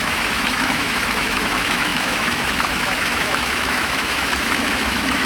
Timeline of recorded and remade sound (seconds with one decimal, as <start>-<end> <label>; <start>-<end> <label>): 0.0-5.3 remade